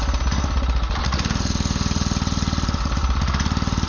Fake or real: real